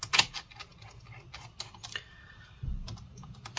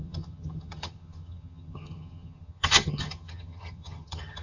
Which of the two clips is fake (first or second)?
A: second